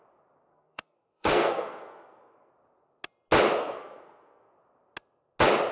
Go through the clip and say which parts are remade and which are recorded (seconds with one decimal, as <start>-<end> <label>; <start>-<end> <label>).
0.0-0.5 recorded; 0.5-2.5 remade; 2.5-3.6 recorded; 3.6-4.5 remade; 4.5-5.7 recorded